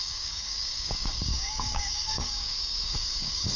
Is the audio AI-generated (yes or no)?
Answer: yes